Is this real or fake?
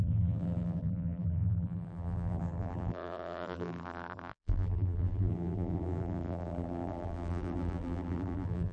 fake